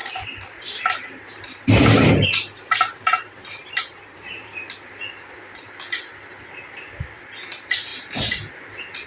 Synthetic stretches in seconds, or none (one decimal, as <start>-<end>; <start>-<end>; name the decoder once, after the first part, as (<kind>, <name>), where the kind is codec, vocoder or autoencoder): 0.0-5.0 (vocoder, BigVGAN v2)